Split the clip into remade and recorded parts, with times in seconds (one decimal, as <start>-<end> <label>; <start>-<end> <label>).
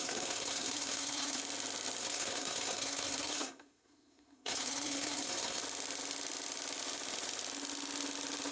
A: 0.0-1.4 remade; 1.4-2.0 recorded; 2.0-5.6 remade; 5.6-8.5 recorded